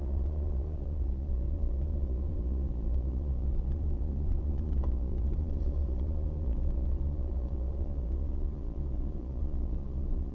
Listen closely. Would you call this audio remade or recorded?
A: remade